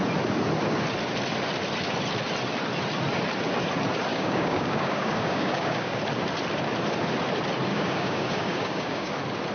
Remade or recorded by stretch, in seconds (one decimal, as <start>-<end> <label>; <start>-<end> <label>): 0.0-4.1 recorded; 4.1-6.0 remade; 6.0-7.7 recorded; 7.7-9.1 remade; 9.1-9.5 recorded